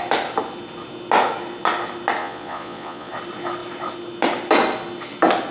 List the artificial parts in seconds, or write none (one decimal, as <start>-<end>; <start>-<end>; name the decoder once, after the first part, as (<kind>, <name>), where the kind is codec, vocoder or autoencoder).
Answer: 2.2-3.1 (vocoder, Vocos)